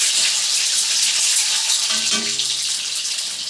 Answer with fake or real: real